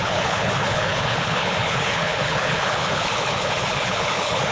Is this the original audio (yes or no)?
no